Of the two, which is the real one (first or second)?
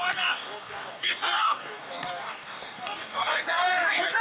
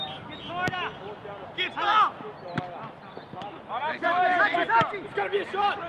second